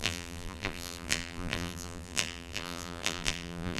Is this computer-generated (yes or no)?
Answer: yes